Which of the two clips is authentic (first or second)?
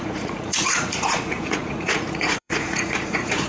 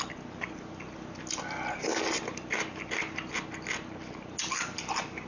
second